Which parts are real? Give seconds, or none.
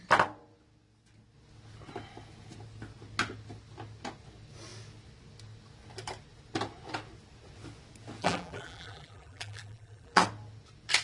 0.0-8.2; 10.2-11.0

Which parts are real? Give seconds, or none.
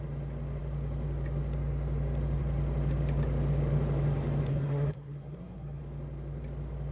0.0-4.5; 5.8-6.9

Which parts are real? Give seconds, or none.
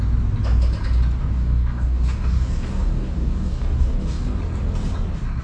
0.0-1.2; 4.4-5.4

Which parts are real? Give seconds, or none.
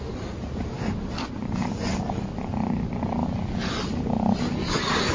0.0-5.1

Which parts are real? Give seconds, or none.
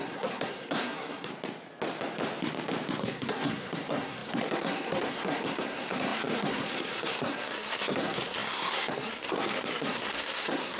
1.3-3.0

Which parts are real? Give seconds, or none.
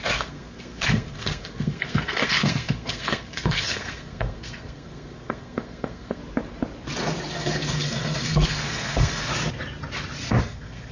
6.2-7.3; 9.3-10.4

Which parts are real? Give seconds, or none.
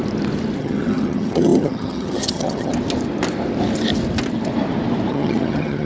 0.0-0.6; 2.7-5.1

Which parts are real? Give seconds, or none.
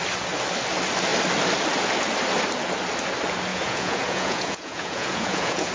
0.0-3.5